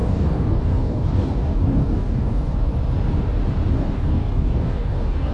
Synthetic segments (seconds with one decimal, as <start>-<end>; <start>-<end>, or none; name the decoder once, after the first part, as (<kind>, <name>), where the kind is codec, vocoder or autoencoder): 0.0-2.7 (codec, DAC); 3.7-5.3